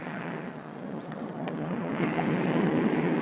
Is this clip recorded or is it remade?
remade